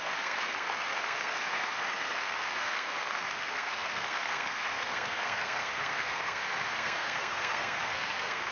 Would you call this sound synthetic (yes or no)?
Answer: yes